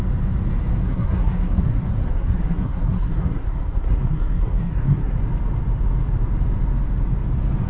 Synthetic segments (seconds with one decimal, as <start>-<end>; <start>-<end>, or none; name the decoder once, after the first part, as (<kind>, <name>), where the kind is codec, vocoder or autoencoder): 0.8-5.2 (codec, SNAC)